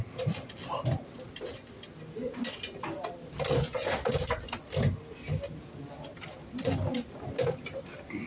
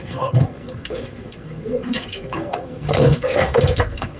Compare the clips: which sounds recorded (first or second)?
first